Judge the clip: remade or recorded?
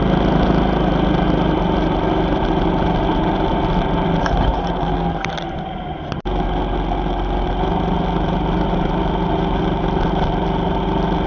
recorded